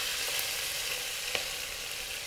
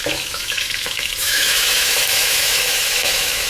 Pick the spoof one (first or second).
second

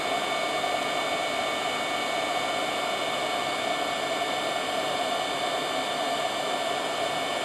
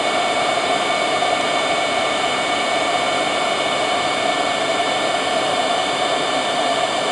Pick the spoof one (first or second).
second